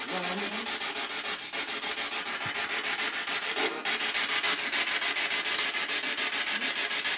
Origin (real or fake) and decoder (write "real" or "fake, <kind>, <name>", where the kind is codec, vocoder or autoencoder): real